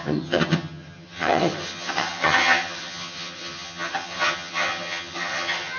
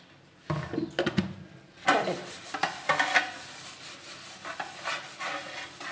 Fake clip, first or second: first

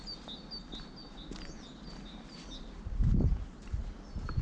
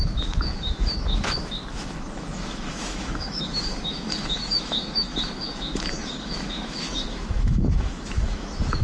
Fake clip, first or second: second